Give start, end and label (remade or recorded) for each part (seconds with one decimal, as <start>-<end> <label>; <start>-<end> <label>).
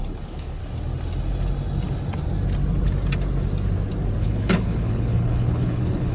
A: 0.0-0.6 remade; 0.6-4.2 recorded; 4.2-6.1 remade